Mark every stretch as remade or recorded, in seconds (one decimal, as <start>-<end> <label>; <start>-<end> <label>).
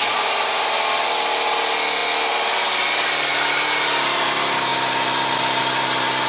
0.0-6.3 recorded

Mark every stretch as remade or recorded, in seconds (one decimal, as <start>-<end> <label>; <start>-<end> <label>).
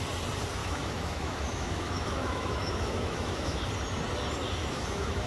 0.0-0.6 recorded; 0.6-3.6 remade; 3.6-4.6 recorded; 4.6-5.3 remade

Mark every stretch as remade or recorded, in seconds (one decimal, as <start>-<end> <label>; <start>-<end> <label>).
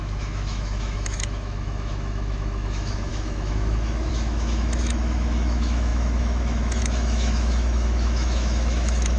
0.0-9.2 remade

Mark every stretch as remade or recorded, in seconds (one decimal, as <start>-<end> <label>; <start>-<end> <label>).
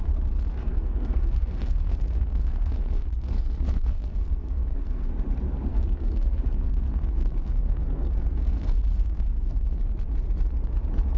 0.0-0.5 recorded; 0.5-5.1 remade; 5.1-5.7 recorded; 5.7-9.8 remade; 9.8-11.2 recorded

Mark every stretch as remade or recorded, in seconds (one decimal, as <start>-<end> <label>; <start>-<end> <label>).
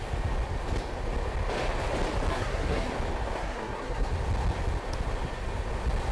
0.0-2.3 recorded; 2.3-2.9 remade; 2.9-3.4 recorded; 3.4-4.1 remade; 4.1-6.1 recorded